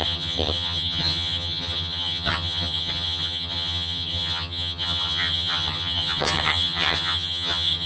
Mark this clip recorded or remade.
remade